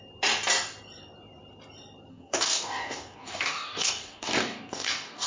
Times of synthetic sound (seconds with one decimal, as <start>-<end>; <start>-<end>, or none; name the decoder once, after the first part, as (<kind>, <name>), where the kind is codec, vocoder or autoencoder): 2.1-5.3 (codec, DAC)